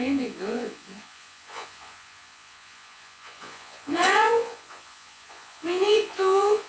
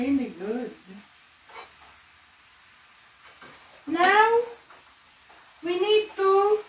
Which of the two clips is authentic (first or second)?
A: second